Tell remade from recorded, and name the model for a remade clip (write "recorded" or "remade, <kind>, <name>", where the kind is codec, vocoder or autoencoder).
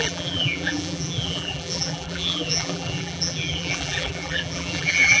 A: remade, vocoder, BigVGAN v2